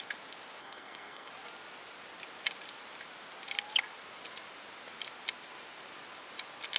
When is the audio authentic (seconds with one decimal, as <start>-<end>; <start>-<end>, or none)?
0.0-0.6; 1.3-6.8